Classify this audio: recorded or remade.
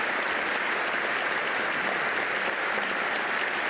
recorded